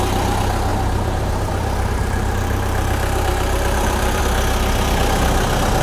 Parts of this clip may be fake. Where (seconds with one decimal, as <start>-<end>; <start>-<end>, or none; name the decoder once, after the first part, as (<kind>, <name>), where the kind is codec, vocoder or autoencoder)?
0.7-4.2 (vocoder, BigVGAN v2)